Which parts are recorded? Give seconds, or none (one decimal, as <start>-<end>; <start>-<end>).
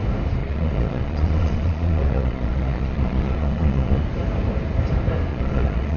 0.0-0.4; 4.0-5.3